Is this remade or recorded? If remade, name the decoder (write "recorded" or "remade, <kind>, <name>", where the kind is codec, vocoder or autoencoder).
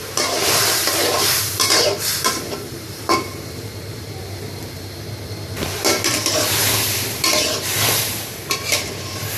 remade, vocoder, BigVGAN v2